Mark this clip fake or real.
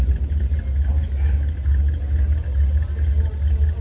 real